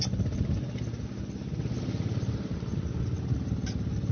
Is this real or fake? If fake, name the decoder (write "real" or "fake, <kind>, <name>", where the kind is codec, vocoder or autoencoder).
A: real